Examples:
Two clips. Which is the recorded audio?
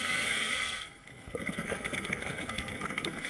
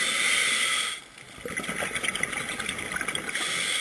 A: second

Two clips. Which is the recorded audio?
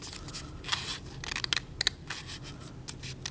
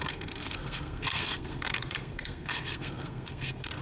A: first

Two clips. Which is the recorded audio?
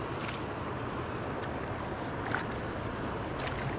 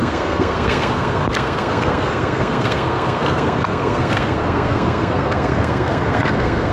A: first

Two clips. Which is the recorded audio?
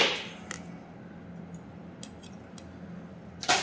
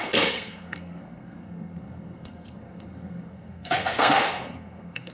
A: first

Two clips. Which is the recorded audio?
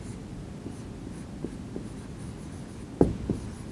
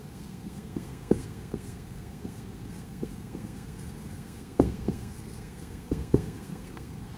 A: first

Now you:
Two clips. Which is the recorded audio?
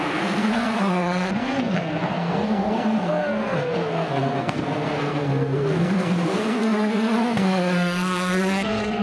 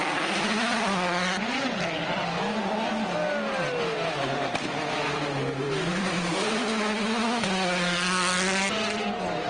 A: second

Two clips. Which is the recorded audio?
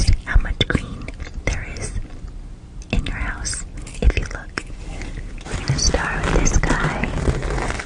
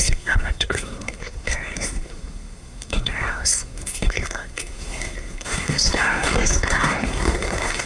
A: first